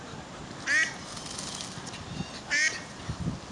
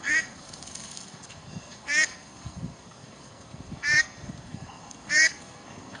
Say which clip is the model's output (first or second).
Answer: second